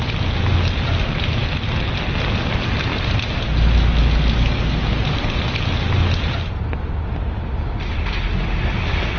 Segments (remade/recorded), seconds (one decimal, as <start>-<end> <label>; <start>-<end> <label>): 0.0-9.2 recorded